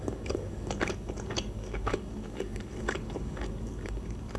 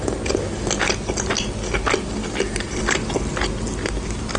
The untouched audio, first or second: second